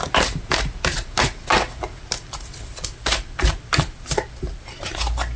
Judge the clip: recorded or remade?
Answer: recorded